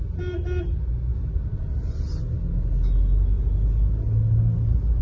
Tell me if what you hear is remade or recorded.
recorded